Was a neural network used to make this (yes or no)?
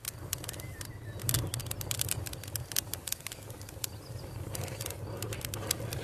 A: no